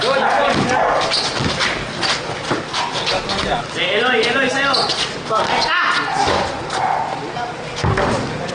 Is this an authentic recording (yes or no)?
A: yes